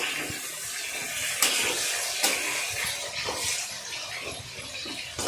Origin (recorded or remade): recorded